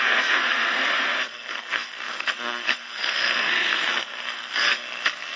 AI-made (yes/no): yes